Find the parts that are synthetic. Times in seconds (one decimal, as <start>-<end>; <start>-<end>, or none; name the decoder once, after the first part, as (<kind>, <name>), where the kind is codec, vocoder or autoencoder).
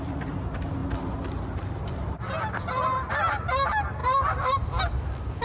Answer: none